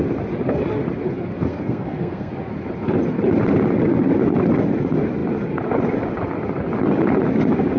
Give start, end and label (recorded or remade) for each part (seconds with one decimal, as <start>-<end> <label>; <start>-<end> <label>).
0.0-1.5 recorded; 1.5-2.3 remade; 2.3-7.8 recorded